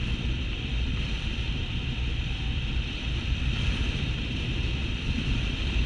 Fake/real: fake